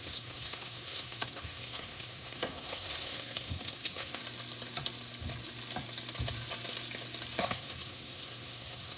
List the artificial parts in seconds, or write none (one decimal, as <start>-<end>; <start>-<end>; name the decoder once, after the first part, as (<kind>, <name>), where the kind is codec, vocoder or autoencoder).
0.0-4.2 (codec, SNAC); 7.4-9.0

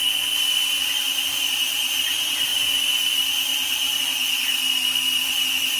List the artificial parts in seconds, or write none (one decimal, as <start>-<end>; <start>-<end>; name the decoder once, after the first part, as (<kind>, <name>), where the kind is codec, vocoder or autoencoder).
none